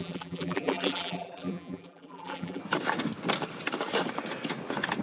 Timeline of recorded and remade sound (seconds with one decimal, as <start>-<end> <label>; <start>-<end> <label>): 0.0-2.6 remade; 2.6-5.0 recorded